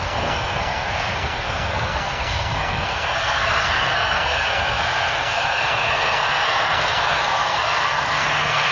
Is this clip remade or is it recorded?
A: remade